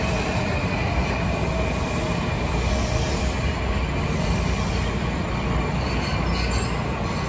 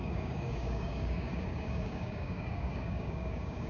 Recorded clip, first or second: first